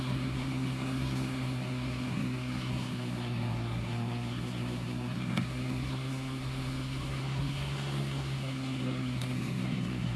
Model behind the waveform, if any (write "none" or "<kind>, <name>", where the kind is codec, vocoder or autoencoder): codec, SNAC